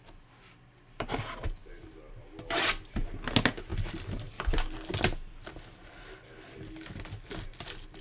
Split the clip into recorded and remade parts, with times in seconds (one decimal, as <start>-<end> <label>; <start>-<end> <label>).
0.0-8.0 recorded